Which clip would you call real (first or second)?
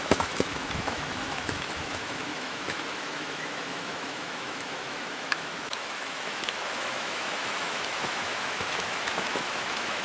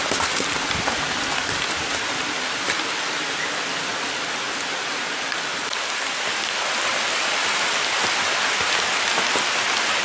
second